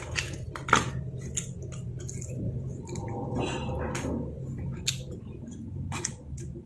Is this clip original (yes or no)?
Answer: yes